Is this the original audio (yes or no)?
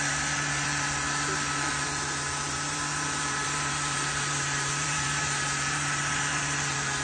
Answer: no